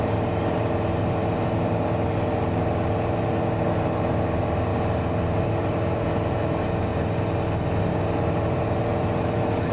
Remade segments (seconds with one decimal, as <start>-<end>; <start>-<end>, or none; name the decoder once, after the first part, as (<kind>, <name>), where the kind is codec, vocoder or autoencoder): 0.0-4.7 (vocoder, BigVGAN v2); 5.4-6.9; 7.8-9.7